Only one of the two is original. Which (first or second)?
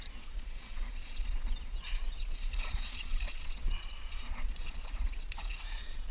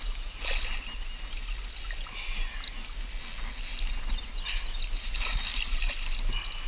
second